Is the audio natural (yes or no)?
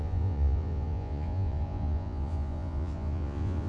no